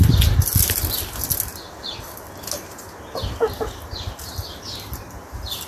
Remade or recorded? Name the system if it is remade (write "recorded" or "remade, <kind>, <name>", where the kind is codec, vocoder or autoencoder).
recorded